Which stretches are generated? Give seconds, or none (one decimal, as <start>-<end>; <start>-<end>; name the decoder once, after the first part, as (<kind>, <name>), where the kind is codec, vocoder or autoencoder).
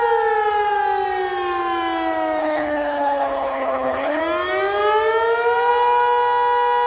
2.4-4.2 (codec, HILCodec)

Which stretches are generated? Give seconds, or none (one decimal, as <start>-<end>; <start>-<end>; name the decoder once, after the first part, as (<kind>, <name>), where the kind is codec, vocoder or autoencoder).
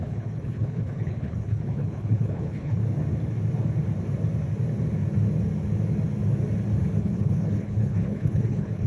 0.0-2.8 (codec, HILCodec); 7.0-8.9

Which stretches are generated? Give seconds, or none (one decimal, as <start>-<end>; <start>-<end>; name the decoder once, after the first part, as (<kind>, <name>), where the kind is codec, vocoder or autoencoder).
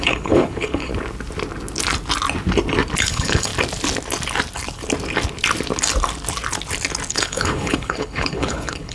0.0-0.9 (codec, HILCodec); 3.0-3.5; 7.1-8.9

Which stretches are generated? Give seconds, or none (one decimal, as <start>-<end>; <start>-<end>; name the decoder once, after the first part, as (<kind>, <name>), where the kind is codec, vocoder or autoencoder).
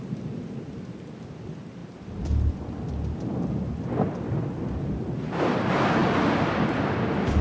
none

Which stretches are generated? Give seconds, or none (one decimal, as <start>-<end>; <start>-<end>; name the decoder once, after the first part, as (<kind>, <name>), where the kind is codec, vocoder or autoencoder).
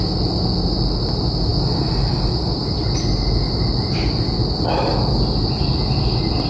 none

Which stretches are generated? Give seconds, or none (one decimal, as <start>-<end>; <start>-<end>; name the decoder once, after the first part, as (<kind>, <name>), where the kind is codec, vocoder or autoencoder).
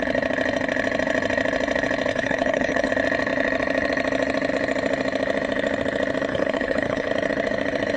2.1-2.9 (codec, HILCodec); 6.3-7.1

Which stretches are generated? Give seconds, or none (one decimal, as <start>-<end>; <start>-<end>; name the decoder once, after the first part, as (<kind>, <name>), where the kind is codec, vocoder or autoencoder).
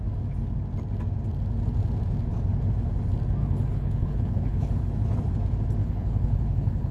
3.4-4.9 (codec, HILCodec); 5.8-6.9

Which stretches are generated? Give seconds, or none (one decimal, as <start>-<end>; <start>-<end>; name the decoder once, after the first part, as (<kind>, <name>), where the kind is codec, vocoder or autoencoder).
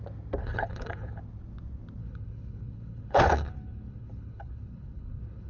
0.4-1.2 (codec, HILCodec); 2.0-5.5